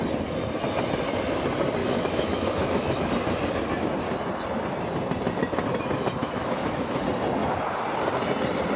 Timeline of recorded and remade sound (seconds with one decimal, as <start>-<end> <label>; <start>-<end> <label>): 0.0-1.8 recorded; 1.8-3.1 remade; 3.1-6.2 recorded; 6.2-7.0 remade; 7.0-8.8 recorded